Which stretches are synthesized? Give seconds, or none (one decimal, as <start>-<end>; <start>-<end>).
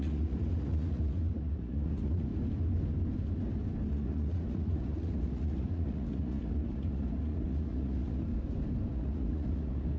0.0-2.3; 3.9-8.3; 8.9-10.0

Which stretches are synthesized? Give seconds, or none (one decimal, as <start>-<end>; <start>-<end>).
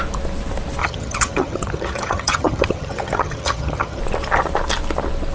0.8-4.0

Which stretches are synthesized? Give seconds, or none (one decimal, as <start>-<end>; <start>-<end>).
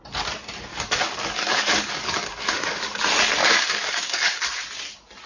0.7-3.0; 3.4-4.4